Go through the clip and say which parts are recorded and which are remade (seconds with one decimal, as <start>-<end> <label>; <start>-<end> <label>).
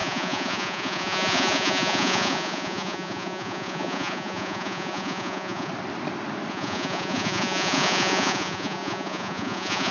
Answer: 0.0-5.7 remade; 5.7-6.5 recorded; 6.5-9.9 remade